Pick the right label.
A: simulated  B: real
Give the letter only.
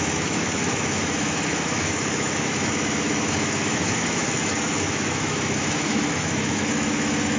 A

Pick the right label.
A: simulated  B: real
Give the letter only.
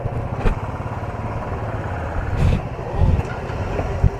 B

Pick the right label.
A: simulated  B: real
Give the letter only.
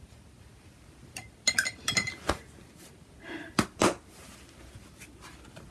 B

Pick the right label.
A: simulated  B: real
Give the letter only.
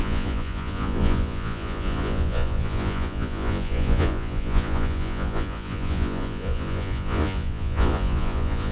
A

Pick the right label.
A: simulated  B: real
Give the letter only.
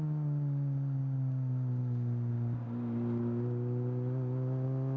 B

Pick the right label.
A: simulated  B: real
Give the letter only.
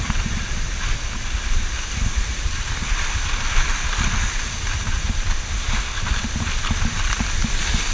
B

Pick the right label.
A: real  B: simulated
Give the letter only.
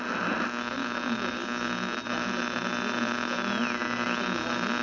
A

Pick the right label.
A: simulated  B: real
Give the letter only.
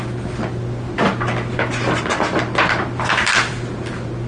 B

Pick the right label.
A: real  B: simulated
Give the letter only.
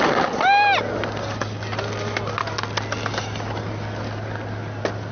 A